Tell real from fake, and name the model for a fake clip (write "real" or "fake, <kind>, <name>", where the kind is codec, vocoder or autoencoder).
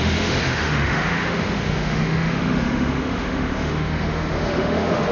fake, autoencoder, DAC-VAE